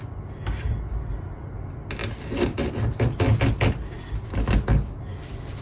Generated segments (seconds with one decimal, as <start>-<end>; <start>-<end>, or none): none

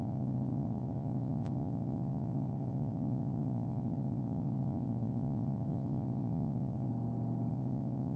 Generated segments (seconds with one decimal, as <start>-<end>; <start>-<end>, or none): 0.0-6.9; 7.5-8.2

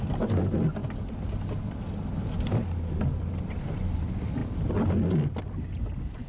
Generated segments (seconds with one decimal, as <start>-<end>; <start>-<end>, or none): none

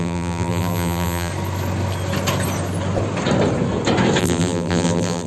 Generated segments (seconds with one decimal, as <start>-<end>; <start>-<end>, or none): 0.0-1.3; 4.2-5.3

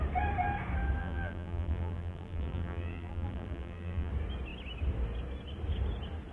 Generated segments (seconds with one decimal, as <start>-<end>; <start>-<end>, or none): 1.0-4.1

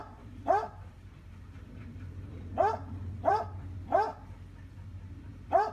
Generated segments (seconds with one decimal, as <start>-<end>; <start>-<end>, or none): 0.0-3.4

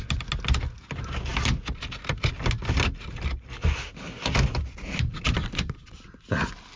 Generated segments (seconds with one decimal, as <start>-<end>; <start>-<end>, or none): none

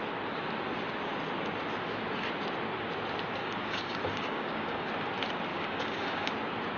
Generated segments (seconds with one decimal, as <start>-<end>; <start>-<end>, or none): 3.4-4.9; 5.5-6.3